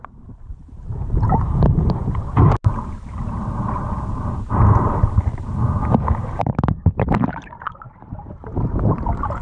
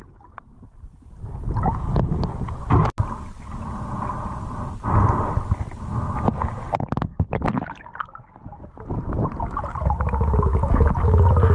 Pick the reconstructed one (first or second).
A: first